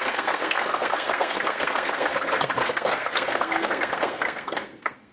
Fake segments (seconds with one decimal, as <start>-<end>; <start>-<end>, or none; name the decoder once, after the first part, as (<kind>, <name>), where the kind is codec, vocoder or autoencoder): 0.0-5.1 (codec, SNAC)